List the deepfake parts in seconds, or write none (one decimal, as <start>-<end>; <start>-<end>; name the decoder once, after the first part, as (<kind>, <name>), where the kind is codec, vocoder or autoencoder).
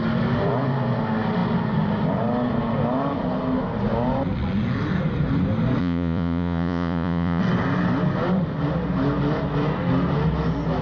5.8-7.4 (vocoder, Vocos)